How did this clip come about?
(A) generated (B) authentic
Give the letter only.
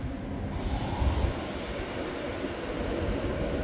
B